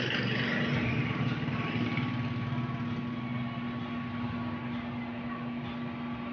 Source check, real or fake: real